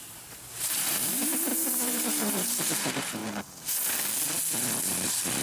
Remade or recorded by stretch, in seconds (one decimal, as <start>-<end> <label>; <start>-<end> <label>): 0.0-3.2 remade; 3.2-4.8 recorded; 4.8-5.4 remade